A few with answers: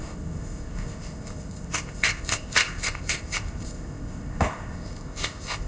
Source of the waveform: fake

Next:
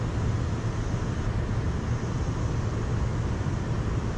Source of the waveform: real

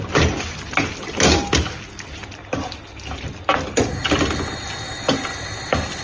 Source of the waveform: real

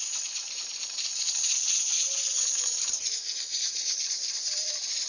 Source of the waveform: fake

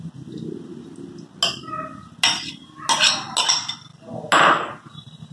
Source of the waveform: real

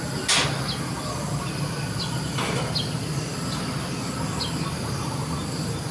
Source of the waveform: real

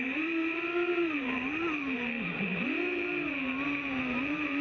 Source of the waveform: real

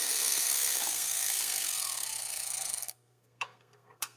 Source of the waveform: fake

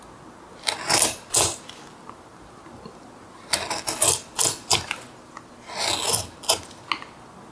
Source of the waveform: real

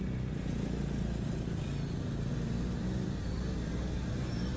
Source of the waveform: real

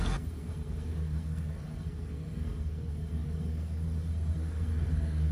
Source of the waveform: fake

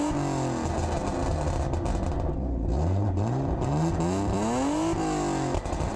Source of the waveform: real